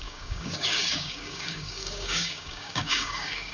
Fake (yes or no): yes